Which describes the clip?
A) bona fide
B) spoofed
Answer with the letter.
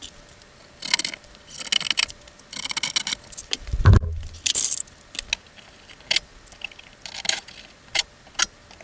A